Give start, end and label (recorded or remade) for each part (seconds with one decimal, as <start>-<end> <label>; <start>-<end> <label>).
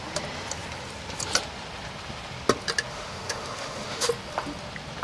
0.0-2.9 recorded; 2.9-4.1 remade; 4.1-5.0 recorded